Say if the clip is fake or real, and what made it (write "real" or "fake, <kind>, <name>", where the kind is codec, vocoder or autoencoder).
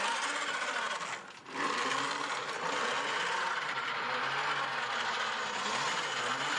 real